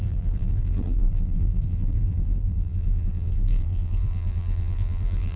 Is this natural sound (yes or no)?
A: no